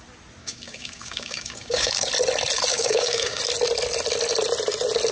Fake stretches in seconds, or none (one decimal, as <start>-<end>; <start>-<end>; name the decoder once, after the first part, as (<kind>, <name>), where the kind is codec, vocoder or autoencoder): 0.4-2.1 (codec, DAC); 2.7-3.4